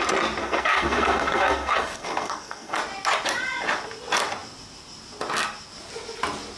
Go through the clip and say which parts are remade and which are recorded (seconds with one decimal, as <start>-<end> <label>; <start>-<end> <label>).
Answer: 0.0-0.4 recorded; 0.4-2.8 remade; 2.8-6.6 recorded